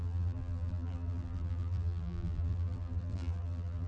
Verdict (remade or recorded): remade